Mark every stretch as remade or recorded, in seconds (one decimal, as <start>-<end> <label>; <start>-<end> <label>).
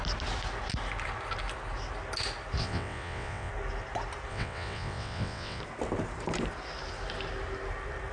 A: 0.0-2.6 recorded; 2.6-3.5 remade; 3.5-4.3 recorded; 4.3-5.6 remade; 5.6-8.1 recorded